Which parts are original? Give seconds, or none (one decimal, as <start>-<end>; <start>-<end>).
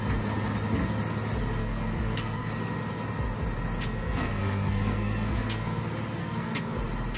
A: 0.0-1.6; 2.5-3.9; 5.8-6.2; 6.8-7.2